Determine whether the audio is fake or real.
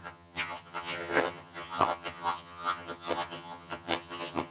fake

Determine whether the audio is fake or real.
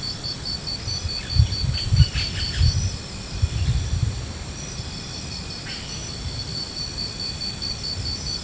real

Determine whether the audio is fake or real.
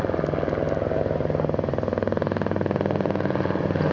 real